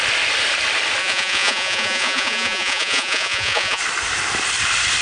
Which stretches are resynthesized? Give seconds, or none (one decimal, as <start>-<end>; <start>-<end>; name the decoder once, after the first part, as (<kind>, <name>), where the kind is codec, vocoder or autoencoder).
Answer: 1.0-3.8 (vocoder, Vocos)